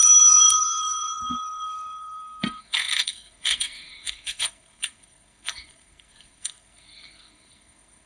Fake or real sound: fake